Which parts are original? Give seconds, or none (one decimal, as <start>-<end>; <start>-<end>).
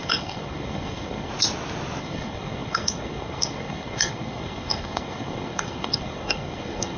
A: 1.3-2.0